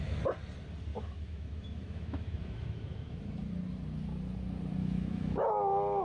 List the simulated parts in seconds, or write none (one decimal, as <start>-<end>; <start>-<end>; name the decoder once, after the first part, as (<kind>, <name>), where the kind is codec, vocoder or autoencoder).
0.9-3.2 (autoencoder, DAC-VAE); 4.8-5.5